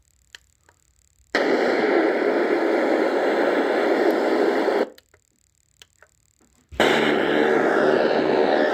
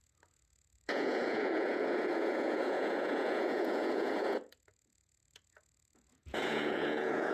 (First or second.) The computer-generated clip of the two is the second